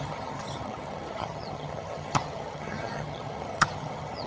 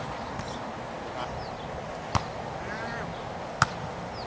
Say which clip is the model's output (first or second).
first